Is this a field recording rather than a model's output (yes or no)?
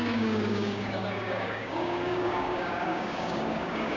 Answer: no